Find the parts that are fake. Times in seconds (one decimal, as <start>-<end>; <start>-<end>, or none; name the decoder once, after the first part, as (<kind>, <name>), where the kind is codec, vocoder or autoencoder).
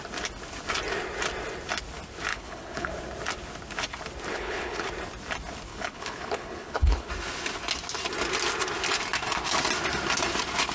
2.3-2.9 (codec, HILCodec); 4.3-4.9; 5.7-7.1